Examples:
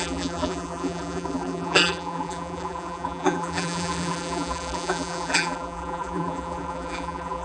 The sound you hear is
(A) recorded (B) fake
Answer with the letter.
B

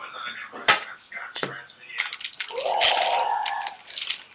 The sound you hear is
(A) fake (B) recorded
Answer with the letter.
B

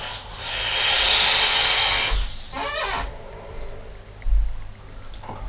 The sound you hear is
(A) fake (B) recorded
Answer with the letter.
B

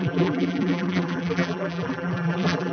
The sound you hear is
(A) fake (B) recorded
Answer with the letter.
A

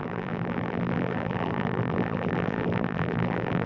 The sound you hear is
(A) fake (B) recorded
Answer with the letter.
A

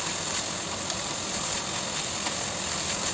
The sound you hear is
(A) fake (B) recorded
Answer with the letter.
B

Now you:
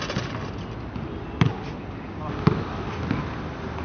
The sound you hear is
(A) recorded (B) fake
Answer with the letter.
A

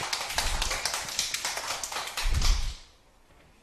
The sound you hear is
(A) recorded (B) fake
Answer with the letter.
A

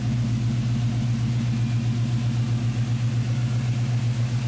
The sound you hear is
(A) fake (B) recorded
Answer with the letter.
B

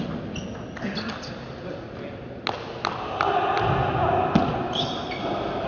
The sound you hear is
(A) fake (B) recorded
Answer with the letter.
B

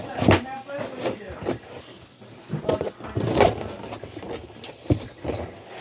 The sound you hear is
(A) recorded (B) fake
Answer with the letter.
A